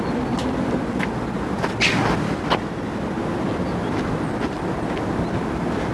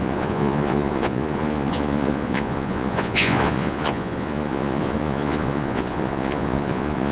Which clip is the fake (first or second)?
second